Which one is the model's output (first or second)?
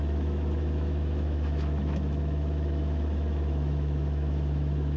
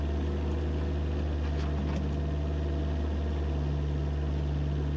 first